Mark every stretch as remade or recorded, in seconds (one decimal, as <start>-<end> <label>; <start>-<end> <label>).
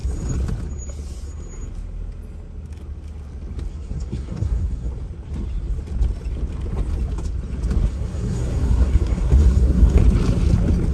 0.0-3.7 recorded; 3.7-4.9 remade; 4.9-7.9 recorded; 7.9-10.0 remade; 10.0-10.9 recorded